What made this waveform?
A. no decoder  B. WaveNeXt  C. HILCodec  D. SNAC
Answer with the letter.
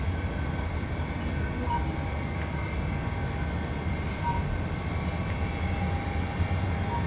A